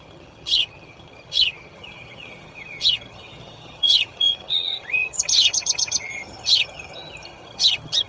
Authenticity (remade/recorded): remade